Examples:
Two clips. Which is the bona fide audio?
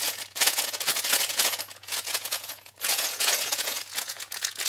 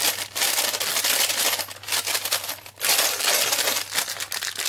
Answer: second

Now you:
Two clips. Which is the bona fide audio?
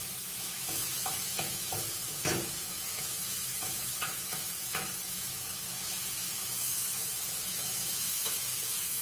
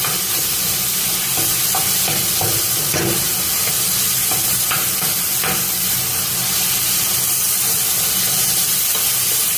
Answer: second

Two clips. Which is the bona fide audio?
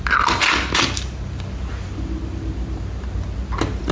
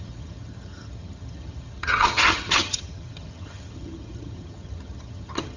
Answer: first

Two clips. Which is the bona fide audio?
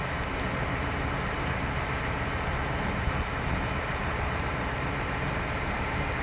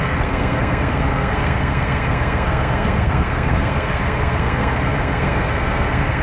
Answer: first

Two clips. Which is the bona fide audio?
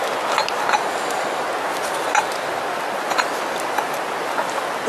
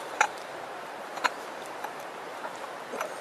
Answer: first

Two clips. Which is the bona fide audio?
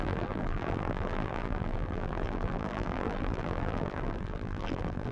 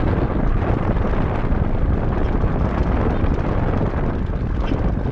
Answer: second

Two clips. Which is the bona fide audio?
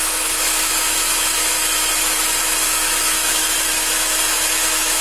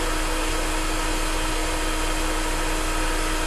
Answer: second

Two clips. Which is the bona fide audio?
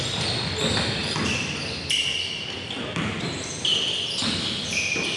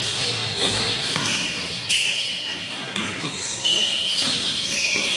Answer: first